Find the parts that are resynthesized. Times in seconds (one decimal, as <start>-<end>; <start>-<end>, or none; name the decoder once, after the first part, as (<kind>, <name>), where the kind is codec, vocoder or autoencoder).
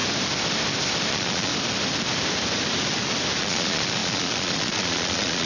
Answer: 1.1-1.5 (vocoder, Vocos); 3.4-5.5